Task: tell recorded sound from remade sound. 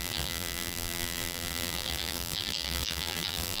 remade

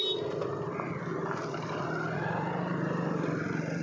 recorded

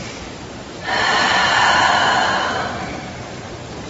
recorded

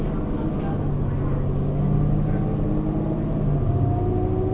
recorded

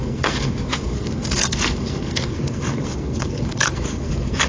remade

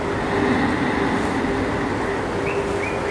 recorded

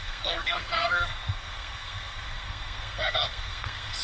remade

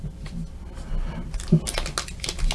recorded